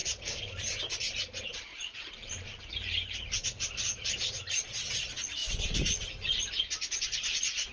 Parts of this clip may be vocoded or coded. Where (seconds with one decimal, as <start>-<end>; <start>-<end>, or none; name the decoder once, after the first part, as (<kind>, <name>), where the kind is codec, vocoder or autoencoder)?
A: 0.0-0.9 (vocoder, BigVGAN v2); 1.7-4.1; 5.4-6.4

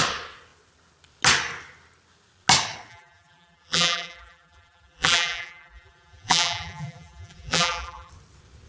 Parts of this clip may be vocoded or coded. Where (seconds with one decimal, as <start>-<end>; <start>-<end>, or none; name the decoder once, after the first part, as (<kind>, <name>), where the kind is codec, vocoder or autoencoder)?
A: 2.9-8.1 (vocoder, BigVGAN v2)

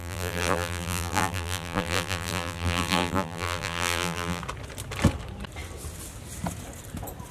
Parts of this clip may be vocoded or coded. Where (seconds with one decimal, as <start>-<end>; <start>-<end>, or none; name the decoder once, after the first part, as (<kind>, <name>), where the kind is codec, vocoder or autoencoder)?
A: 0.0-4.4 (vocoder, BigVGAN v2)

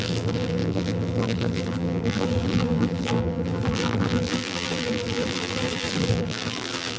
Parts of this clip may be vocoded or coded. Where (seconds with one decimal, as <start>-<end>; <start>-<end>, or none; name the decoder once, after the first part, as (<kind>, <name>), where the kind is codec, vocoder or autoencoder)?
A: 0.0-7.0 (vocoder, BigVGAN v2)

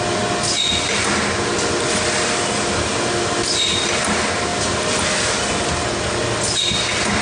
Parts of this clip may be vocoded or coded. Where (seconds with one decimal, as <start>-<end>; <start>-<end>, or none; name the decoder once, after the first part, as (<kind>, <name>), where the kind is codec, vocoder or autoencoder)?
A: none

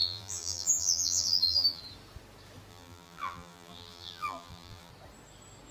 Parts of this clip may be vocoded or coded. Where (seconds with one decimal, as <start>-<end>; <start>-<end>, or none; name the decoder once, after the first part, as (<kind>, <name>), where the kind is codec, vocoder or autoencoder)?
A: 0.0-1.8 (vocoder, BigVGAN v2); 2.7-4.9